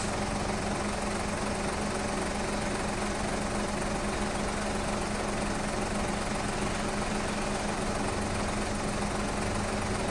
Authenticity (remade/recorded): recorded